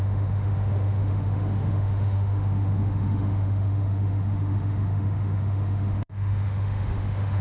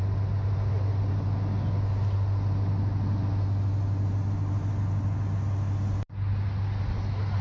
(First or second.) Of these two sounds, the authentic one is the second